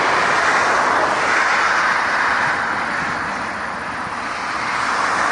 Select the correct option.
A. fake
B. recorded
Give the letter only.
B